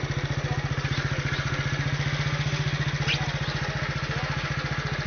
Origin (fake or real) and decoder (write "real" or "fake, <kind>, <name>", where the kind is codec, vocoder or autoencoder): real